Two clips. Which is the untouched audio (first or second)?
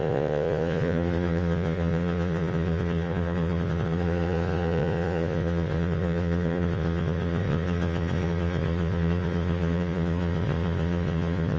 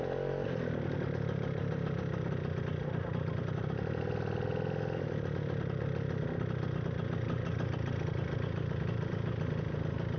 second